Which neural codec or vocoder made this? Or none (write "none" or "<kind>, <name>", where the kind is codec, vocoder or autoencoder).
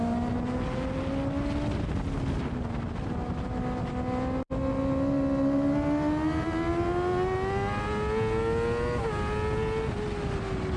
none